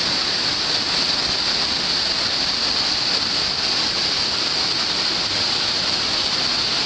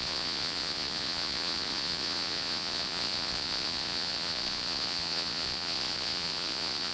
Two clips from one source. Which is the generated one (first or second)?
second